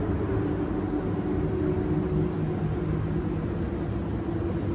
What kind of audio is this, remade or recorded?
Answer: recorded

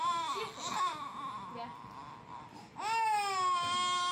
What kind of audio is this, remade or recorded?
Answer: recorded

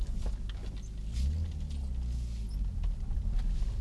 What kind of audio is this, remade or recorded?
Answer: recorded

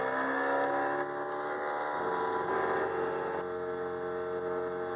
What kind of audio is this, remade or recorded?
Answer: recorded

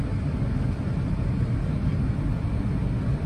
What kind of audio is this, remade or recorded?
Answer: recorded